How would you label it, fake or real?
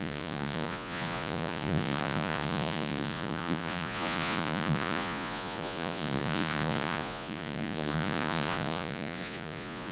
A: fake